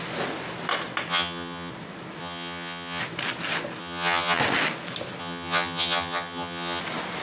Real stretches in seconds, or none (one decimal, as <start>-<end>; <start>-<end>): 0.0-1.1; 1.7-2.2; 3.0-3.8; 4.4-5.2; 6.8-7.2